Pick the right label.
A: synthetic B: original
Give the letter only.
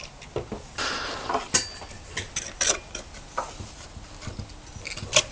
B